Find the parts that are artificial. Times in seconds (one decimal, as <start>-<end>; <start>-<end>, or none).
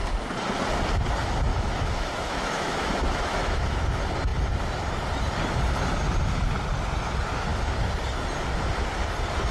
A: 1.5-3.8